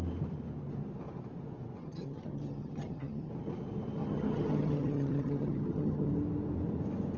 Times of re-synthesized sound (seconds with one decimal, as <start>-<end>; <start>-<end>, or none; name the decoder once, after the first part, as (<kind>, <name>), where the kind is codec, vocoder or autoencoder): 1.8-3.3 (vocoder, HiFi-GAN); 4.0-6.1